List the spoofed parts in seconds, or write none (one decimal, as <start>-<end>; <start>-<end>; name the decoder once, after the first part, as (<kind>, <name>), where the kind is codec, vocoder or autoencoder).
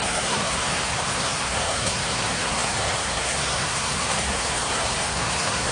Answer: 0.0-5.7 (codec, SNAC)